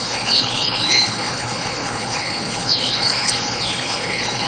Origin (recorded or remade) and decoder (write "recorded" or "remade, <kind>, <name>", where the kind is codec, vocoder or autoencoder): remade, codec, HILCodec